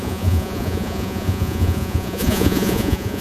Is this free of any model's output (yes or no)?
no